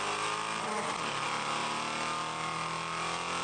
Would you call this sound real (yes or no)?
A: yes